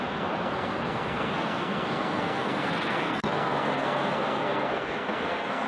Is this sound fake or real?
fake